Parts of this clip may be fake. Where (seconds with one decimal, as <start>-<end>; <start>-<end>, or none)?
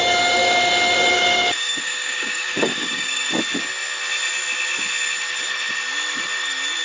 1.1-3.3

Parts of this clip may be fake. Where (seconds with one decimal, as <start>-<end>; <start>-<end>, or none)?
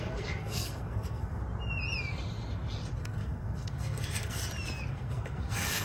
0.0-1.4; 3.0-4.4; 4.9-5.8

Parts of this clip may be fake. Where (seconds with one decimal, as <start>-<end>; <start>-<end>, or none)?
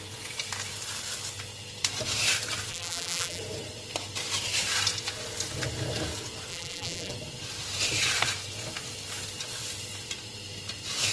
2.7-3.4; 6.5-7.1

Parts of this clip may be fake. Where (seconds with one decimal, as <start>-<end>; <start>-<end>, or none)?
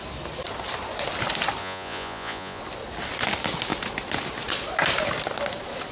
1.6-2.6